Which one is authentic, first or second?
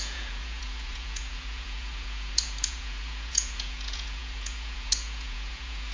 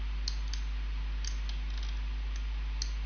second